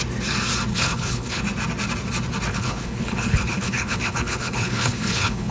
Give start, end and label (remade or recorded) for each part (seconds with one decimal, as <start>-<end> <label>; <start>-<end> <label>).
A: 0.0-0.7 recorded; 0.7-1.4 remade; 1.4-2.5 recorded; 2.5-5.5 remade